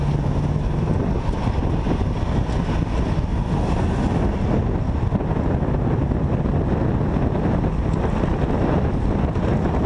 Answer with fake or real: real